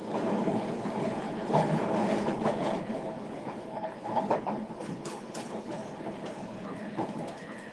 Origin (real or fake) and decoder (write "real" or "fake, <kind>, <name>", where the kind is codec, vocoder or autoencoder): fake, codec, HILCodec